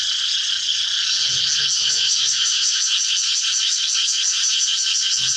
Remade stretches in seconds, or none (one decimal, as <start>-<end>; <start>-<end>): 1.8-2.8